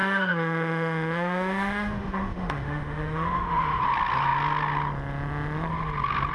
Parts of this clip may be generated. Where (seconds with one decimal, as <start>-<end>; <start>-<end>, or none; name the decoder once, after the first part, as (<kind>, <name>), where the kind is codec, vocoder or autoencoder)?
0.0-3.8 (autoencoder, DAC-VAE)